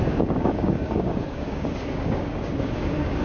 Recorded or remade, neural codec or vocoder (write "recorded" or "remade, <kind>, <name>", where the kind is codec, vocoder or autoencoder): remade, codec, DAC